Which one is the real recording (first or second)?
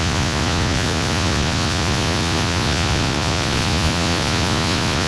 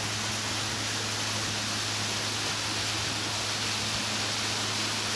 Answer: second